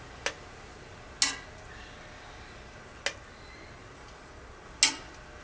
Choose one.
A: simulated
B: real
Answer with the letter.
B